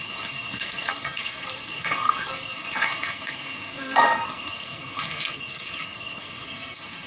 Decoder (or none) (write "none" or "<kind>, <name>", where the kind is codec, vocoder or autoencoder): codec, SNAC